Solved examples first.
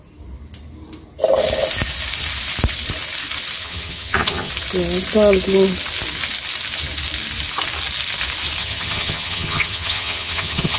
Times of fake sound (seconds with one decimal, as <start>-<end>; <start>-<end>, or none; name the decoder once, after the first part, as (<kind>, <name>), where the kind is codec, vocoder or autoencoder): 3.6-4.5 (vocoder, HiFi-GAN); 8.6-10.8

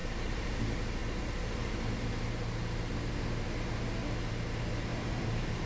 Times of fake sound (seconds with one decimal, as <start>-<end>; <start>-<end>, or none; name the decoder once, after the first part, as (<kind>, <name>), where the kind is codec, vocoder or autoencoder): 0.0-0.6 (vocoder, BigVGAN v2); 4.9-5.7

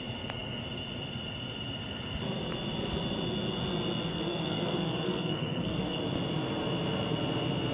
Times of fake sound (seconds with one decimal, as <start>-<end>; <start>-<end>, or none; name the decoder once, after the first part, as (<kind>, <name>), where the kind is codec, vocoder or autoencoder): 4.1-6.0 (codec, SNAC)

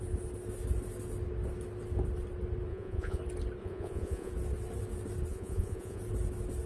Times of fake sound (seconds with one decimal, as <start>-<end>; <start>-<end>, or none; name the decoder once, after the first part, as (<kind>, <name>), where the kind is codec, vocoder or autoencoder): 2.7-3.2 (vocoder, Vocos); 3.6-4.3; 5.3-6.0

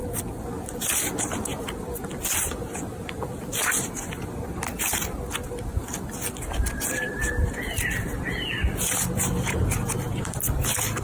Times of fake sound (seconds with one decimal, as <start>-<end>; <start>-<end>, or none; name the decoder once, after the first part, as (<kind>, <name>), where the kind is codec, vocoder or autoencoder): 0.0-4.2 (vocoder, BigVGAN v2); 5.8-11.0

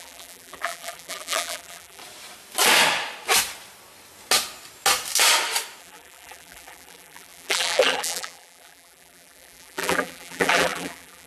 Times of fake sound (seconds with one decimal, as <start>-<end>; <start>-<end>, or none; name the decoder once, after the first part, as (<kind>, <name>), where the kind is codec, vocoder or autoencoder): 0.0-2.0 (vocoder, BigVGAN v2); 5.8-11.3

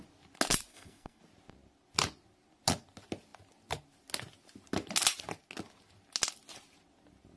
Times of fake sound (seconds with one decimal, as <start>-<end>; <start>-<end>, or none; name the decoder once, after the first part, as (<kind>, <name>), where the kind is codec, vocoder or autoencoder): 0.7-1.2 (codec, SNAC)

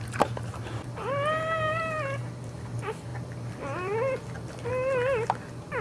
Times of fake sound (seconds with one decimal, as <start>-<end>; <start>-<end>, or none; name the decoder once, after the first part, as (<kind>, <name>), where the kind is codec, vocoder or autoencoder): none